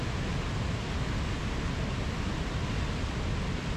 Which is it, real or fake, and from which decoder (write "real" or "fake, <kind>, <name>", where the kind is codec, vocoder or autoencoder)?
real